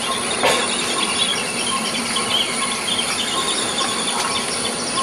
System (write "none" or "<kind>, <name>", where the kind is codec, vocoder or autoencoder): none